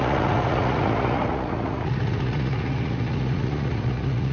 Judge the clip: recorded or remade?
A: remade